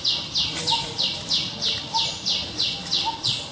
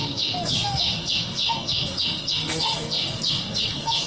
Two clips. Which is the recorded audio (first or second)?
first